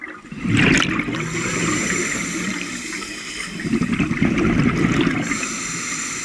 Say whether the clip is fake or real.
real